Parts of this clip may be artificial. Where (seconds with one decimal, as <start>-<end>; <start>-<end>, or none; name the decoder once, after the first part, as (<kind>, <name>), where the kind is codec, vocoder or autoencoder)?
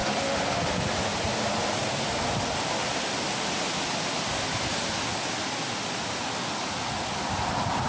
none